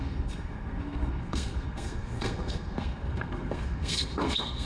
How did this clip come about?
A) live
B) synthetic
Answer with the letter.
B